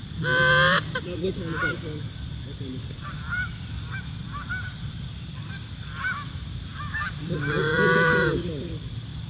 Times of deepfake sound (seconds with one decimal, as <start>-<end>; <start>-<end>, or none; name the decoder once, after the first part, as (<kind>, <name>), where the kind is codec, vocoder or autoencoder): 0.0-9.3 (vocoder, BigVGAN v2)